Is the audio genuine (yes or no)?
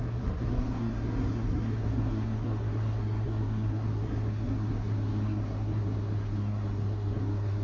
no